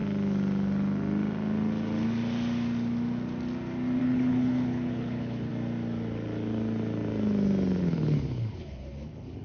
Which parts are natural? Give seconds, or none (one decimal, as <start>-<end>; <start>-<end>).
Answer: 0.0-4.0; 5.5-7.8